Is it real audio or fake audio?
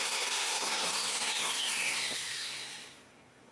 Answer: fake